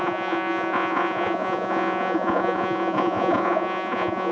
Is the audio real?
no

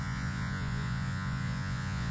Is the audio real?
no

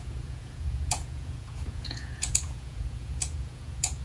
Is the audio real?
no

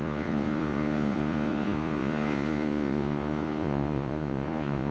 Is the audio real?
no